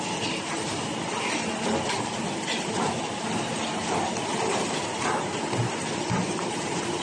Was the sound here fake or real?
real